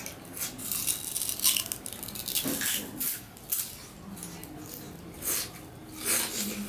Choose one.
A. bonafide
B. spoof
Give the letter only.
A